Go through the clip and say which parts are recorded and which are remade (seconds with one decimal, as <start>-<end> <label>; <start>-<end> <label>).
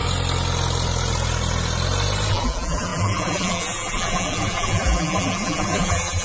0.0-2.3 recorded; 2.3-6.2 remade